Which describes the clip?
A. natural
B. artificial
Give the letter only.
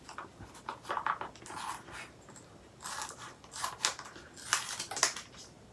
A